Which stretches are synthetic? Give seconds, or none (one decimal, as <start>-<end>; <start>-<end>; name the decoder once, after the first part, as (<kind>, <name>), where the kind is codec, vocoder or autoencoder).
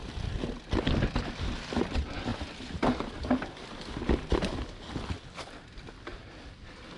0.8-6.2 (vocoder, BigVGAN v2)